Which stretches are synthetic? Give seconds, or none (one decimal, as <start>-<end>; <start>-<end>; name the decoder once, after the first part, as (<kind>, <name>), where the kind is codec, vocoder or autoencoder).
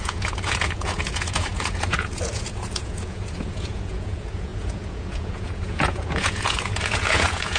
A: 0.0-7.6 (vocoder, Vocos)